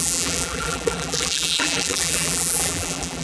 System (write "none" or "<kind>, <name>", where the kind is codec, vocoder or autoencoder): vocoder, BigVGAN v2